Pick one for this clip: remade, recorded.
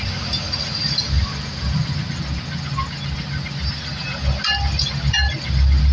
recorded